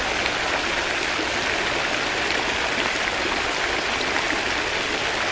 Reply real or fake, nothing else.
real